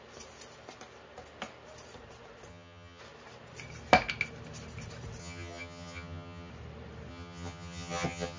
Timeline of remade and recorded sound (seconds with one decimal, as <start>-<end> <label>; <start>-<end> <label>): 0.0-2.5 recorded; 2.5-3.0 remade; 3.0-5.2 recorded; 5.2-6.5 remade; 6.5-7.1 recorded; 7.1-8.4 remade